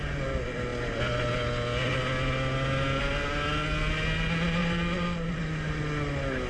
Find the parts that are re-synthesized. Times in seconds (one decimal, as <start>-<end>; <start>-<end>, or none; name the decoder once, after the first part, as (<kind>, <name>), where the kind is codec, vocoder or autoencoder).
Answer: 4.6-5.4 (vocoder, BigVGAN v2)